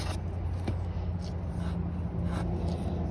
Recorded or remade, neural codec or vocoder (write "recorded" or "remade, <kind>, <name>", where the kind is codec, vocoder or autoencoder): recorded